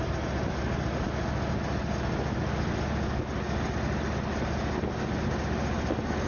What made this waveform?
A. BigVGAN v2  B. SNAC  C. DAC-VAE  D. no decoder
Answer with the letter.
D